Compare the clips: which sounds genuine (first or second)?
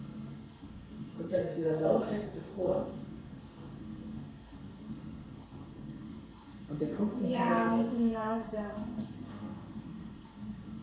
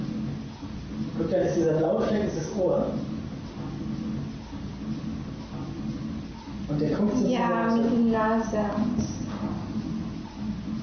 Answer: second